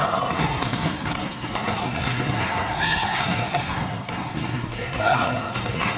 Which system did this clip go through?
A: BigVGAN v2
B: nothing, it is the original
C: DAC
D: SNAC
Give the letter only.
D